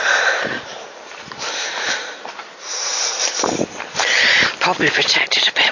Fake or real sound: fake